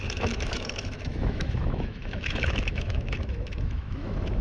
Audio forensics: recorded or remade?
remade